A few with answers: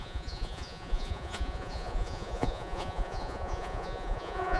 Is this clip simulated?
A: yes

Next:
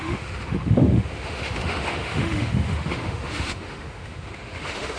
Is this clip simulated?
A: yes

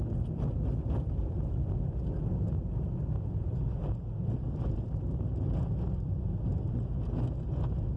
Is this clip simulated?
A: no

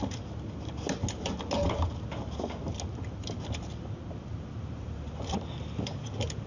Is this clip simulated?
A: no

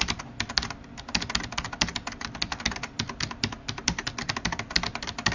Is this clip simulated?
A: no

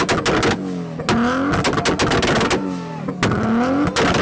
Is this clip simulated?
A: no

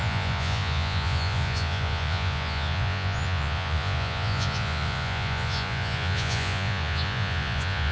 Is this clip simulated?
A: yes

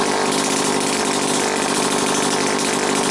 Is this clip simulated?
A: yes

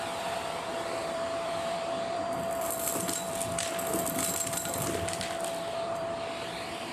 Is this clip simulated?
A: yes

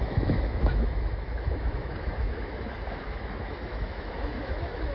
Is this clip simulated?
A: yes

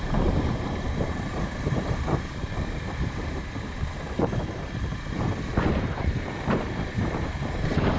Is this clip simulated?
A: yes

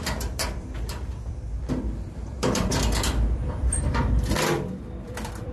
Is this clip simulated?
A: yes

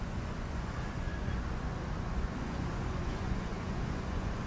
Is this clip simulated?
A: yes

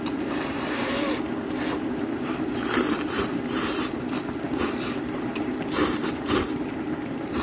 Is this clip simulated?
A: yes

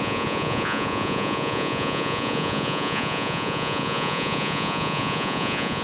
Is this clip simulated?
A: yes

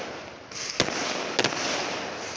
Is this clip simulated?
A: no